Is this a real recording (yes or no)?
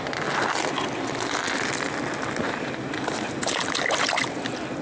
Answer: yes